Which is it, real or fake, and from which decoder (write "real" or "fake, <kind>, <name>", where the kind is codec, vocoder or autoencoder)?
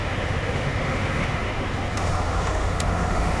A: fake, autoencoder, DAC-VAE